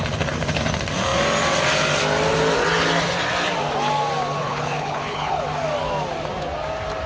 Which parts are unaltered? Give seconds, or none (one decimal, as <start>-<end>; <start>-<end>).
0.0-4.4; 5.4-7.1